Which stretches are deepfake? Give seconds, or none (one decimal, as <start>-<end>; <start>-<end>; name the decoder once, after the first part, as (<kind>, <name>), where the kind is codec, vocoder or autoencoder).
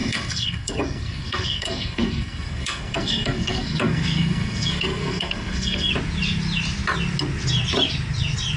0.0-5.9 (codec, SNAC)